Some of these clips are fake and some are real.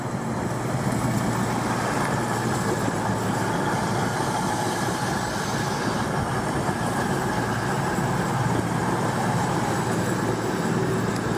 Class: real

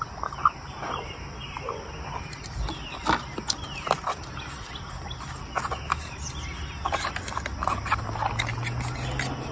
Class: real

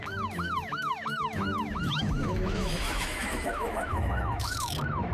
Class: fake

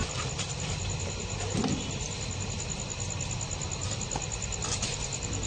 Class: real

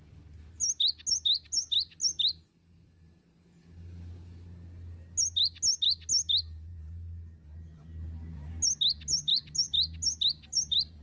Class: real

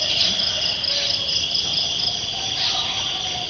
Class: real